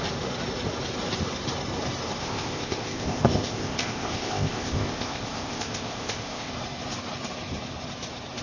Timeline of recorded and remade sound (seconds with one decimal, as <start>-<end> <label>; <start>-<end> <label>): 0.0-2.2 recorded; 2.2-6.5 remade; 6.5-8.4 recorded